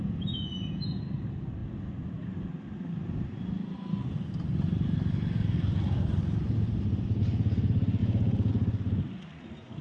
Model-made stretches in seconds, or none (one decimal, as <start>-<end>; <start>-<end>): 0.0-1.0; 8.0-8.5